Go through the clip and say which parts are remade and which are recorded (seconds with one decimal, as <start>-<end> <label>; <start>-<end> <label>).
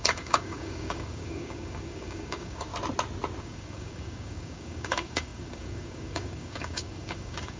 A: 0.0-2.7 remade; 2.7-3.4 recorded; 3.4-7.6 remade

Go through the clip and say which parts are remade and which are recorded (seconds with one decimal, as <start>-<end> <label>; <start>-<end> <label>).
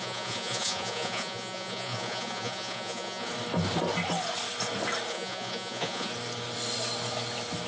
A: 0.0-3.3 remade; 3.3-5.1 recorded; 5.1-6.1 remade; 6.1-7.7 recorded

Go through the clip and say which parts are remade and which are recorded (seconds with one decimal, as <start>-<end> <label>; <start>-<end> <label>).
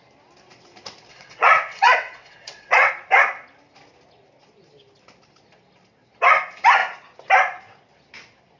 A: 0.0-1.1 recorded; 1.1-2.9 remade; 2.9-8.6 recorded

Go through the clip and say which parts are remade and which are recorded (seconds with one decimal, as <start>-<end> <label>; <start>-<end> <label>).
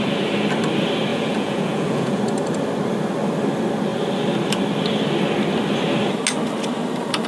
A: 0.0-1.1 recorded; 1.1-2.2 remade; 2.2-7.3 recorded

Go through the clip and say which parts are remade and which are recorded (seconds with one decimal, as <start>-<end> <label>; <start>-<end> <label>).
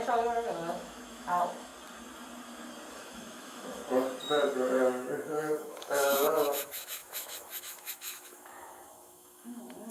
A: 0.0-1.7 remade; 1.7-2.9 recorded; 2.9-3.8 remade; 3.8-4.3 recorded; 4.3-9.9 remade